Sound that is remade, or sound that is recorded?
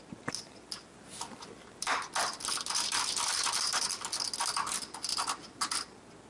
recorded